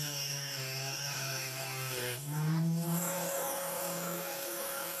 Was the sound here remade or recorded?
remade